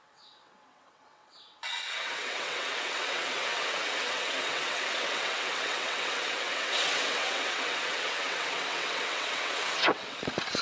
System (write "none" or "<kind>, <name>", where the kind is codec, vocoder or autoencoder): vocoder, WaveNeXt